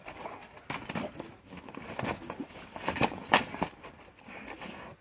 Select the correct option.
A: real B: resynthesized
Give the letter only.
A